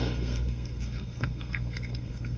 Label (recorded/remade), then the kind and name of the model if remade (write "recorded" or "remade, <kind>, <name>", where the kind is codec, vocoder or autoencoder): remade, codec, SNAC